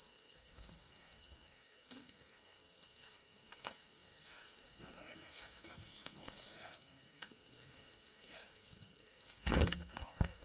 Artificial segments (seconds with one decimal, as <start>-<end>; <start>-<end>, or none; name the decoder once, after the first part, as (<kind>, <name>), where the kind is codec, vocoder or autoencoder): 0.0-10.4 (codec, SNAC)